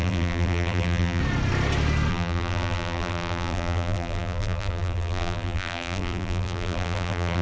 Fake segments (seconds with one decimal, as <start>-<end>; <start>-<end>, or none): 0.0-1.2; 2.1-7.4